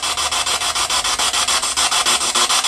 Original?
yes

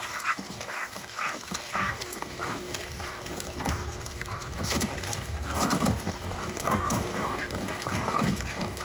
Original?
no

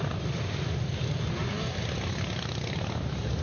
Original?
yes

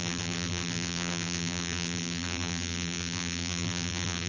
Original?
no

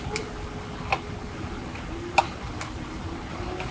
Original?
yes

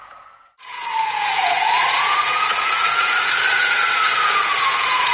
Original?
no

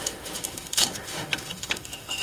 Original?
no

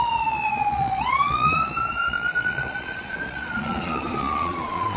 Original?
no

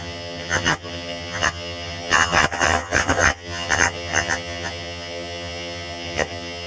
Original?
no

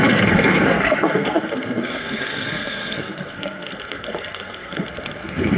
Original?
no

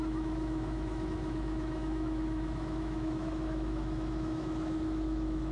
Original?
no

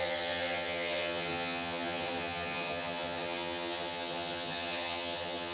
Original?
no